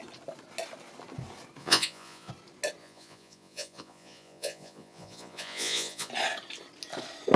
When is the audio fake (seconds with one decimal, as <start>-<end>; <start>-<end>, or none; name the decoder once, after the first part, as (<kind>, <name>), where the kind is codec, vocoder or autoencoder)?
1.6-2.3 (vocoder, Vocos); 2.8-6.1